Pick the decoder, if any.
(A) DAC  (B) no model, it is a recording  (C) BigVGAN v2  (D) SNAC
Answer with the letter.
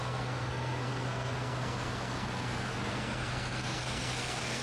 D